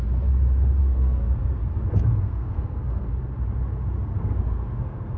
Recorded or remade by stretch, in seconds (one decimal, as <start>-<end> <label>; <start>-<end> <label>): 0.0-0.8 recorded; 0.8-1.6 remade; 1.6-2.2 recorded; 2.2-3.1 remade; 3.1-4.2 recorded; 4.2-5.2 remade